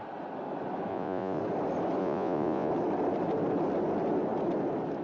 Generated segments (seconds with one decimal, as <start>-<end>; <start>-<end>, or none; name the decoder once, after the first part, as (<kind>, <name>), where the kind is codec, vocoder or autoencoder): 0.9-1.4 (vocoder, Vocos); 2.0-2.7